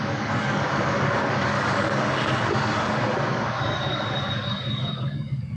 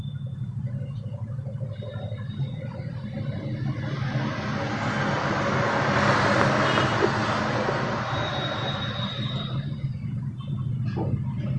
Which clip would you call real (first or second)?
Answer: second